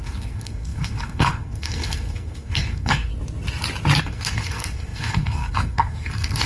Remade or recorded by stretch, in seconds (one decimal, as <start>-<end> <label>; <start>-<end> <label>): 0.0-3.1 remade; 3.1-4.0 recorded; 4.0-6.5 remade